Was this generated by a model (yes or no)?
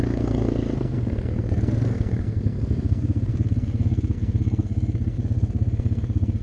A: yes